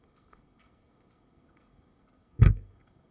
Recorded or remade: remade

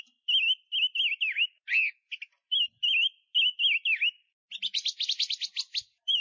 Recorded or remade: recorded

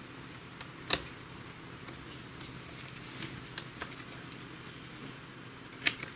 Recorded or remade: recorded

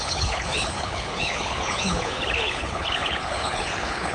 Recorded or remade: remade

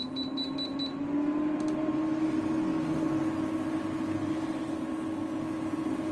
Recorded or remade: recorded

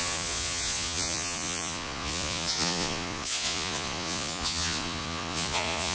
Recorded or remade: remade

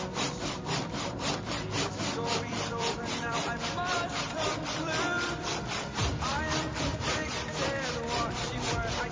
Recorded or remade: remade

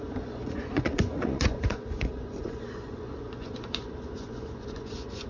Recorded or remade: remade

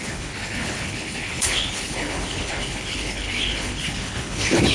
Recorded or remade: remade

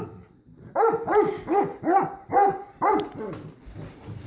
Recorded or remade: recorded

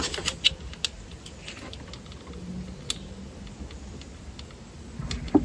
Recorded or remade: recorded